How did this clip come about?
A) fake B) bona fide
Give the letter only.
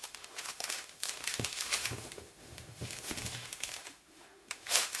A